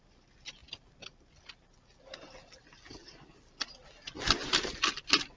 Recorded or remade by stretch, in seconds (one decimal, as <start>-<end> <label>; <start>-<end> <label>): 0.0-5.4 recorded